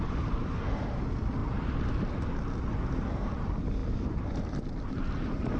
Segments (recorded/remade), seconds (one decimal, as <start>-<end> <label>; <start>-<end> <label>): 0.0-5.6 recorded